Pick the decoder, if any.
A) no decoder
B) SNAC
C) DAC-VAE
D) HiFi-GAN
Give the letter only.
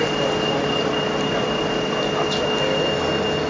A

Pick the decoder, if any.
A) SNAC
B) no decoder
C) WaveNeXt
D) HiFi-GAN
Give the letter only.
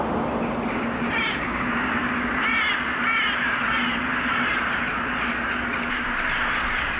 B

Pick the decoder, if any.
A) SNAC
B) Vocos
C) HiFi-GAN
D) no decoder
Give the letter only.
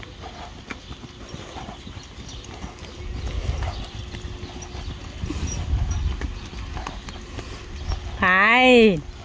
D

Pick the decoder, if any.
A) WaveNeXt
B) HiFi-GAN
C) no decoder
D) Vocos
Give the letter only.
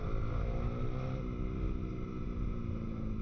C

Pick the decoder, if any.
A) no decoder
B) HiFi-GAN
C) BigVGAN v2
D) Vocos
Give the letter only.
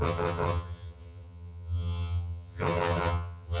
B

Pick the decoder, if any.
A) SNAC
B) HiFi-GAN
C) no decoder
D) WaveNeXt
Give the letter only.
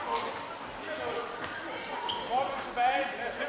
C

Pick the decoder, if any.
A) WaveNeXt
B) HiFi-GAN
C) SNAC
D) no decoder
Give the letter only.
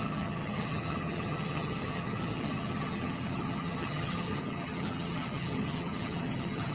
B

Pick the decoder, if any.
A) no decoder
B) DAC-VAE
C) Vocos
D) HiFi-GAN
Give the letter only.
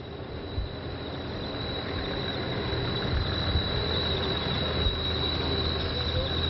A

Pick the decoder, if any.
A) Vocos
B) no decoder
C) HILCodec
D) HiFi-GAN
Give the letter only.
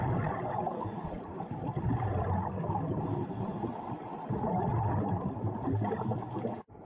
B